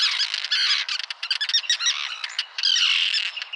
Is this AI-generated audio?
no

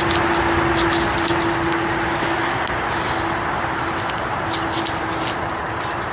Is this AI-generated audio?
no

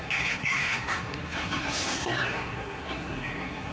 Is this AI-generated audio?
yes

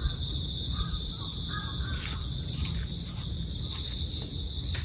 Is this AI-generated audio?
no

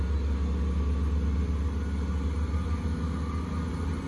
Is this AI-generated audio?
no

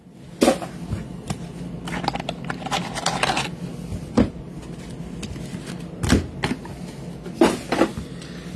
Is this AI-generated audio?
no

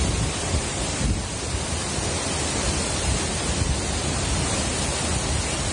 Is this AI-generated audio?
no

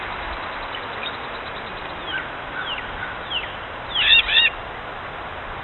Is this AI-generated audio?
no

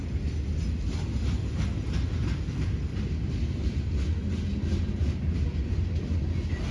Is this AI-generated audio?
no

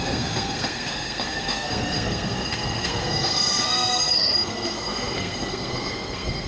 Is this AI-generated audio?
yes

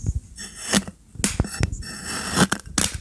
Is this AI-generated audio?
no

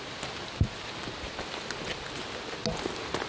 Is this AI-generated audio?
no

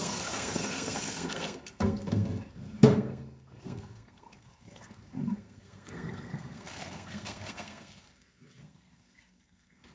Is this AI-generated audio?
yes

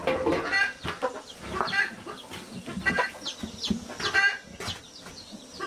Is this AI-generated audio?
no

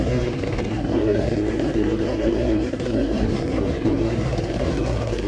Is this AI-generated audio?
yes